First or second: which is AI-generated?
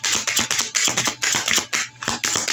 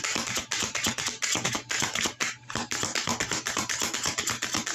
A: second